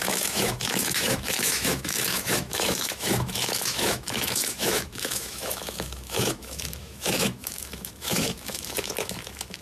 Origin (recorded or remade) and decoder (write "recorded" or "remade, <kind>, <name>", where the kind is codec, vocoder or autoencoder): remade, autoencoder, DAC-VAE